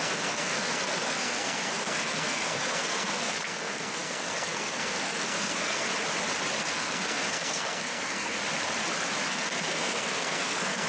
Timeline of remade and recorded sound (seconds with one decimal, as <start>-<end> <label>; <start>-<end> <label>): 0.0-5.9 remade; 5.9-6.6 recorded; 6.6-8.4 remade; 8.4-9.3 recorded; 9.3-10.9 remade